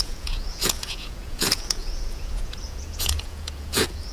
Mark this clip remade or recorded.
remade